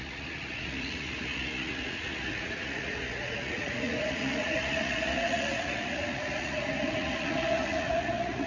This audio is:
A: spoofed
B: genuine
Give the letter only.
A